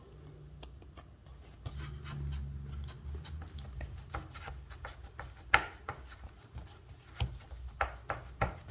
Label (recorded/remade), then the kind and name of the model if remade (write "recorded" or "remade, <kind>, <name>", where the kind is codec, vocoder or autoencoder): recorded